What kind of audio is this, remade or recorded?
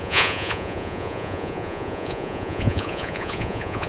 remade